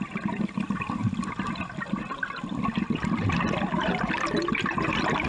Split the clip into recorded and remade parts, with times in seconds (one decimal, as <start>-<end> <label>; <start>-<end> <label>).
0.0-5.3 recorded